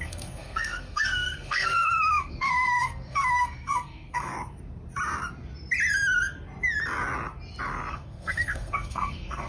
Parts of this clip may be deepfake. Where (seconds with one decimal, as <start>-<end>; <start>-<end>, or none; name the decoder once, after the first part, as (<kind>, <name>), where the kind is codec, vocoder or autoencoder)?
0.0-4.3 (codec, SNAC); 7.9-9.5